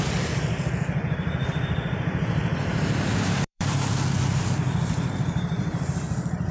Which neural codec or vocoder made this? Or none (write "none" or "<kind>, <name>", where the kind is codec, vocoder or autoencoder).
vocoder, BigVGAN v2